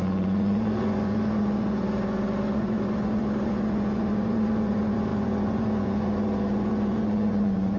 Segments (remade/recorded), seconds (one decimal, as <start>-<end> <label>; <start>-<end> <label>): 0.0-7.8 remade

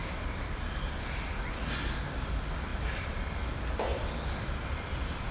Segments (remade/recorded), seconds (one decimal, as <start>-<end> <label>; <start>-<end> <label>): 0.0-1.0 remade; 1.0-2.7 recorded; 2.7-3.4 remade; 3.4-3.9 recorded; 3.9-5.3 remade

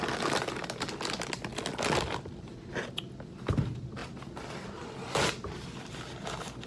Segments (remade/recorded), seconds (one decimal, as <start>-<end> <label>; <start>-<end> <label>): 0.0-6.7 recorded

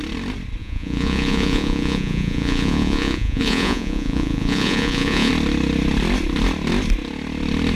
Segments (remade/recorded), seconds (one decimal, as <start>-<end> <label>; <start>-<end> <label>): 0.0-0.6 recorded; 0.6-5.3 remade; 5.3-7.8 recorded

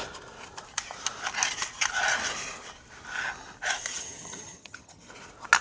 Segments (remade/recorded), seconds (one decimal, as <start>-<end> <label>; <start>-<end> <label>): 0.0-3.9 recorded; 3.9-5.1 remade; 5.1-5.6 recorded

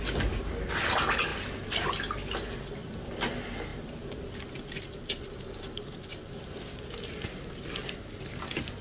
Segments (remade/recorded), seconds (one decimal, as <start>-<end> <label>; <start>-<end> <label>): 0.0-3.7 recorded; 3.7-5.0 remade; 5.0-6.2 recorded; 6.2-8.0 remade; 8.0-8.8 recorded

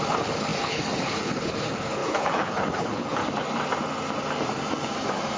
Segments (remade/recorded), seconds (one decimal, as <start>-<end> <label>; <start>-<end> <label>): 0.0-3.2 remade; 3.2-5.4 recorded

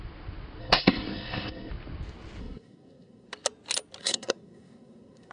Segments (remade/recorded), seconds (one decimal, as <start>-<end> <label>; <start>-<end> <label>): 0.0-0.6 recorded; 0.6-1.7 remade; 1.7-2.4 recorded; 2.4-3.3 remade; 3.3-4.0 recorded; 4.0-5.3 remade